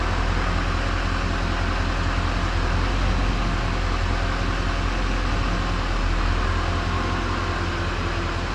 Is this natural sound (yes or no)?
yes